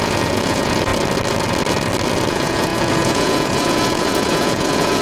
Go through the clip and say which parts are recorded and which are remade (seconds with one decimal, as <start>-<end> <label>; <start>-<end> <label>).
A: 0.0-0.9 remade; 0.9-2.3 recorded; 2.3-5.0 remade